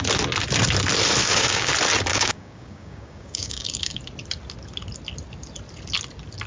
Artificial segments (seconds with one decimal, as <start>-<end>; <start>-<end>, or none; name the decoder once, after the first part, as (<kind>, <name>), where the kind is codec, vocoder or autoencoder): 1.2-1.7 (codec, DAC); 2.1-4.0